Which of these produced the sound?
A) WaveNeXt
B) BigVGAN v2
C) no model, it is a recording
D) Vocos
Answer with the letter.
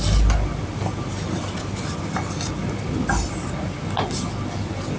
C